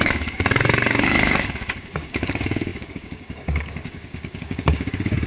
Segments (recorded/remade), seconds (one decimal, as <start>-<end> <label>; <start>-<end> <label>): 0.0-5.3 remade